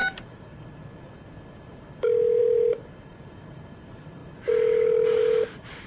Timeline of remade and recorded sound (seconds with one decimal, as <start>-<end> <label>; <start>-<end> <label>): 0.0-2.4 recorded; 2.4-4.2 remade; 4.2-5.2 recorded; 5.2-5.9 remade